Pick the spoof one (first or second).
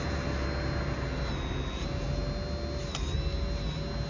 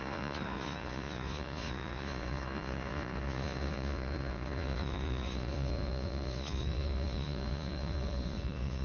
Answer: second